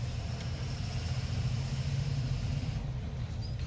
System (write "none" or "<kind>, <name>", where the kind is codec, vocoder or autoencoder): none